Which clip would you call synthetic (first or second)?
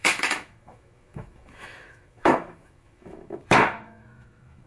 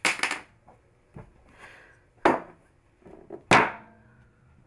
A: first